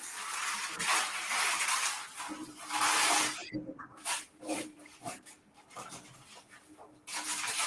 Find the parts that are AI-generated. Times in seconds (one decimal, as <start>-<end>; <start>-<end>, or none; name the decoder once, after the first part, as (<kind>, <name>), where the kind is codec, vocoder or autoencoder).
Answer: 2.4-5.9 (vocoder, BigVGAN v2)